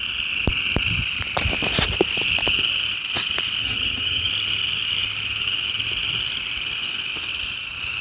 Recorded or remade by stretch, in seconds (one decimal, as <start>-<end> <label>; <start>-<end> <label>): 0.0-3.6 recorded; 3.6-4.3 remade; 4.3-8.0 recorded